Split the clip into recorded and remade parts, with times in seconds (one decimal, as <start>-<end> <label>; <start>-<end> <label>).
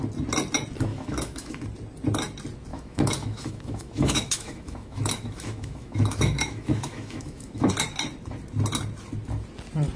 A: 0.0-0.9 recorded; 0.9-1.6 remade; 1.6-2.7 recorded; 2.7-7.7 remade; 7.7-10.0 recorded